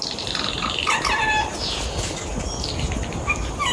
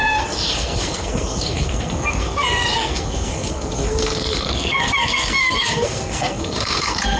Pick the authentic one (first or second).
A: first